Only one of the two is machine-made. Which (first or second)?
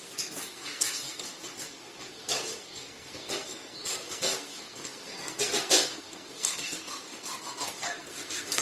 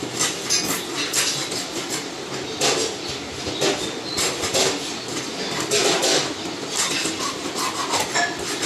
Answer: first